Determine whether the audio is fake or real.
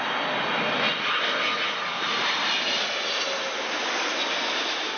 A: real